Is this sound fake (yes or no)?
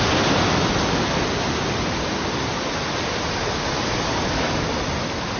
no